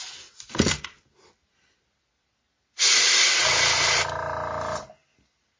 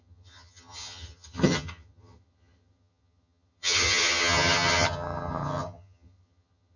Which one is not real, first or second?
second